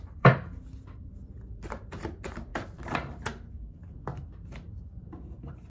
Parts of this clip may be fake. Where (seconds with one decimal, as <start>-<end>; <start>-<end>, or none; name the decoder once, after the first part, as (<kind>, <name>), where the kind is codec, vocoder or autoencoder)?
0.0-5.7 (vocoder, BigVGAN v2)